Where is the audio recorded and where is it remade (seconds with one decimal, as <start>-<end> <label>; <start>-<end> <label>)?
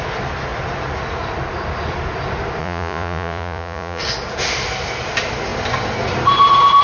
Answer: 0.0-2.6 recorded; 2.6-4.0 remade; 4.0-6.8 recorded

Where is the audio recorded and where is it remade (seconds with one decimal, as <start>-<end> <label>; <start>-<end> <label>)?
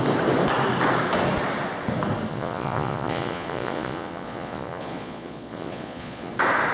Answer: 0.0-2.3 recorded; 2.3-6.3 remade; 6.3-6.7 recorded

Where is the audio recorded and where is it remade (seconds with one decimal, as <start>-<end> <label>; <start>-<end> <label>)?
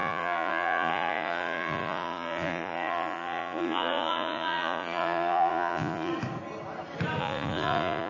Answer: 0.0-6.1 remade; 6.1-7.2 recorded; 7.2-8.1 remade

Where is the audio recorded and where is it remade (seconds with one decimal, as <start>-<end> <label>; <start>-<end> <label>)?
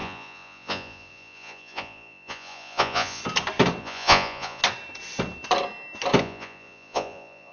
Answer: 0.0-3.2 remade; 3.2-3.8 recorded; 3.8-4.6 remade; 4.6-6.2 recorded; 6.2-7.5 remade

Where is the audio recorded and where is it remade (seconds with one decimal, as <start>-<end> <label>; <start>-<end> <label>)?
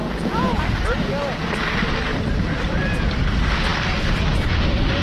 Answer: 0.0-0.6 remade; 0.6-5.0 recorded